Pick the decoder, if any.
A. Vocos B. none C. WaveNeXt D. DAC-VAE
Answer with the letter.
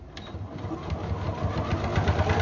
B